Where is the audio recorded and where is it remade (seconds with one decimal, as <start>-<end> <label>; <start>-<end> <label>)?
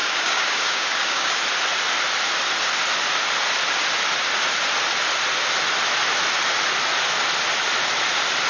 0.0-1.4 remade; 1.4-8.5 recorded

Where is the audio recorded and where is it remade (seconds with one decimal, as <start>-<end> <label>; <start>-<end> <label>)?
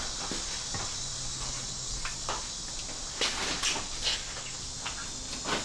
0.0-1.3 recorded; 1.3-2.4 remade; 2.4-4.1 recorded; 4.1-4.6 remade; 4.6-5.6 recorded